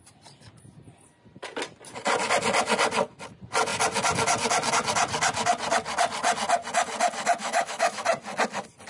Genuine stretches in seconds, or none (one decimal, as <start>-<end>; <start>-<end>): 0.0-7.4; 8.0-8.9